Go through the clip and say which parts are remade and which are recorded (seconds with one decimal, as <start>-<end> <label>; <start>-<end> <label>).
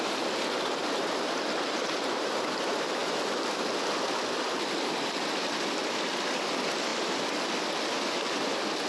0.0-8.9 recorded